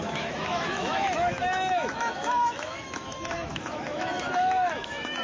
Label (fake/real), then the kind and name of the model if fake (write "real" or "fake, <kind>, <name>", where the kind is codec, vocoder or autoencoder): fake, autoencoder, DAC-VAE